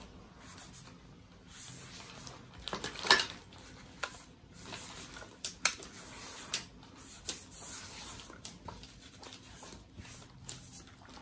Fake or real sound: real